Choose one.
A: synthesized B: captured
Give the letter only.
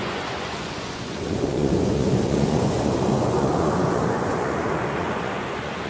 A